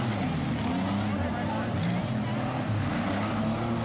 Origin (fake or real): real